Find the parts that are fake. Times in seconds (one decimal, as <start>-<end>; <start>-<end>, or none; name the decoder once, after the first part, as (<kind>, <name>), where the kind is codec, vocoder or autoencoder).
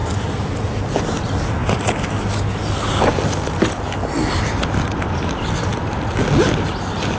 none